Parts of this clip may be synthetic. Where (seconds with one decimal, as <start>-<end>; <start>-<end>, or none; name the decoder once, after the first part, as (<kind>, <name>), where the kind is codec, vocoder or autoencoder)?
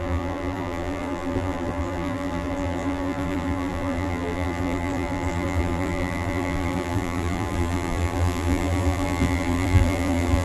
0.0-10.4 (vocoder, BigVGAN v2)